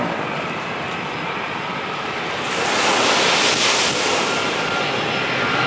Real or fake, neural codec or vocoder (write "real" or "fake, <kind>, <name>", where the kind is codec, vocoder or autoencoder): real